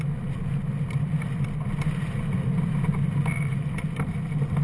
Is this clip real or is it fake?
real